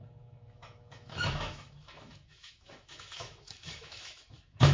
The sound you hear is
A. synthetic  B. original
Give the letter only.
A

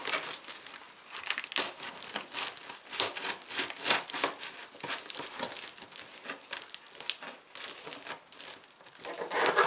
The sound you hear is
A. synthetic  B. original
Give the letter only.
B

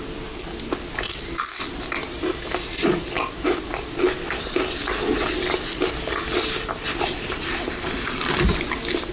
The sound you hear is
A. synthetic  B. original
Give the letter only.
B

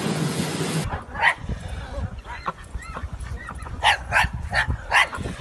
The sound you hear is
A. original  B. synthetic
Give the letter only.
B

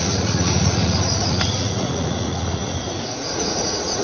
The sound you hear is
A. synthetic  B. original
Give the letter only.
A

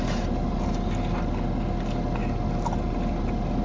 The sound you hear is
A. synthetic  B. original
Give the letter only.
B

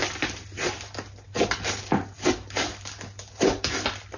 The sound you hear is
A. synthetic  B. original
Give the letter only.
B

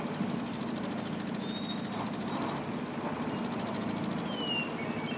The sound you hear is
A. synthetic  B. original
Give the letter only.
B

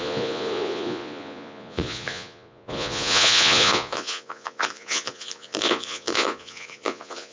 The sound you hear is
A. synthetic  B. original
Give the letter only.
A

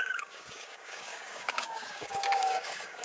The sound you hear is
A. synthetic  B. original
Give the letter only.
A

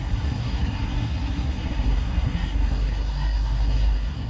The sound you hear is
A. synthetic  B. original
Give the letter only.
A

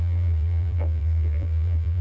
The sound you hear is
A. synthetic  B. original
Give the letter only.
A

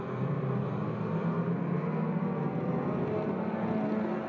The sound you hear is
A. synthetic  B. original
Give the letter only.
B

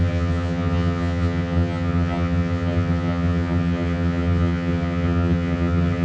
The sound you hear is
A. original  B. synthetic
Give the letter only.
B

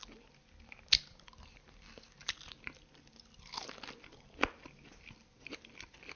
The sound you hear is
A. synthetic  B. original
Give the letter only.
B